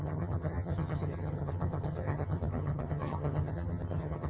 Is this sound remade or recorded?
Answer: remade